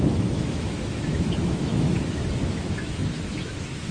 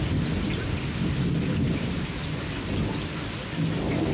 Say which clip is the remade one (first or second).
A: first